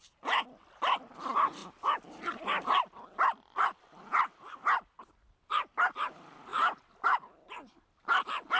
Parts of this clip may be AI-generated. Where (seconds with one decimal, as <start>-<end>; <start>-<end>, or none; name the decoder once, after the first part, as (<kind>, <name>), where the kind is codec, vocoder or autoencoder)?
none